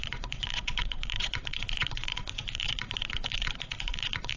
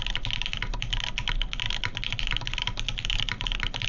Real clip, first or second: second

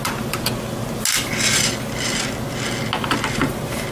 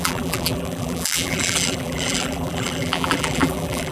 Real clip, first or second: first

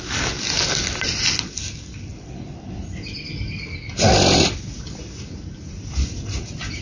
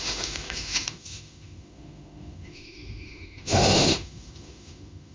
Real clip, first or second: first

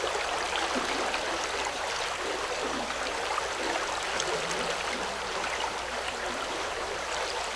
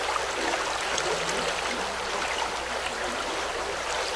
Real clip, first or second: second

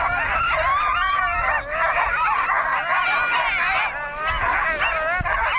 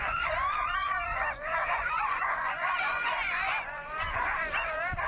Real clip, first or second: first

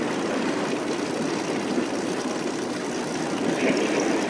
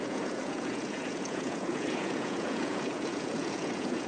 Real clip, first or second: first